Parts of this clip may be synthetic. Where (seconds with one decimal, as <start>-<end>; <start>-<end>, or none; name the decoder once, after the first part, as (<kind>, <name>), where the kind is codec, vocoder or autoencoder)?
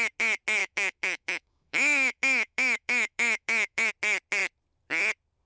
0.6-3.9 (autoencoder, DAC-VAE)